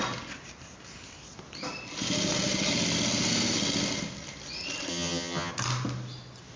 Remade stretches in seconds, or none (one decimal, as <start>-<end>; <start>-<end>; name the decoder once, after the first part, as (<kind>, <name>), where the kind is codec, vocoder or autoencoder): 4.9-5.5 (vocoder, HiFi-GAN)